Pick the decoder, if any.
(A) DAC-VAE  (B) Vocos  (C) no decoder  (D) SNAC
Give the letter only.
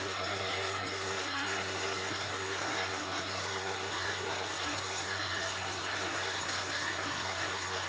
D